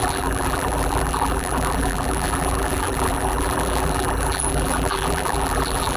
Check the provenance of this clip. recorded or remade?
remade